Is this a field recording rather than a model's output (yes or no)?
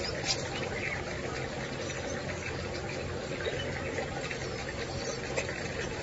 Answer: yes